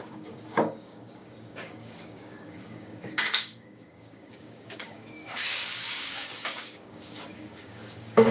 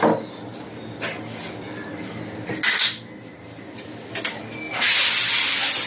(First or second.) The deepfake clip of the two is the first